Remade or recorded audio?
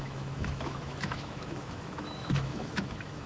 remade